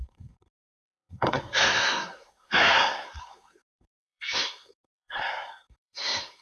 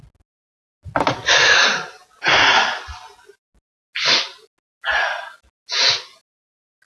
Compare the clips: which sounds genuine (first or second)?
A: second